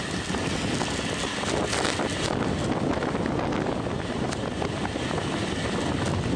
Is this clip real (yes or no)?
yes